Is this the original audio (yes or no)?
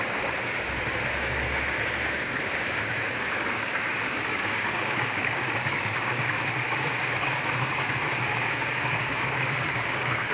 no